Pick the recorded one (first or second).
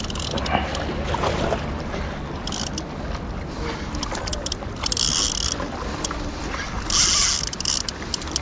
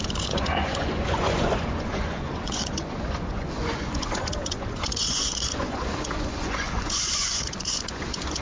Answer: first